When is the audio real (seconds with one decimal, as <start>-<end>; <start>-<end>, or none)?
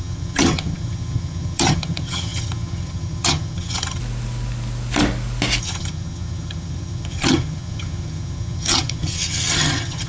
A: 4.0-5.6